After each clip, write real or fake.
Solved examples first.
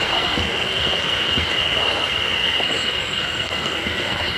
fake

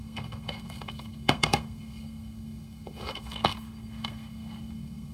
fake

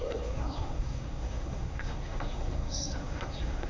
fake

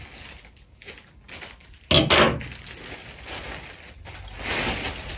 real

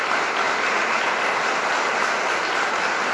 real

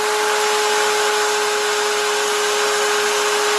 real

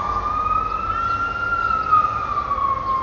real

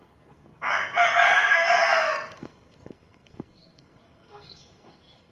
fake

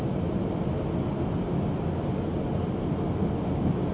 real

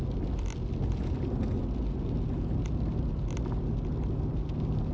real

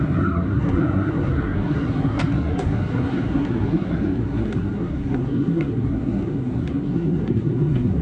fake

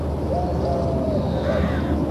real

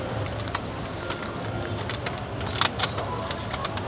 real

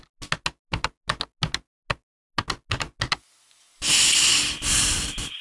real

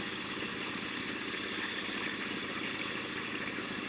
real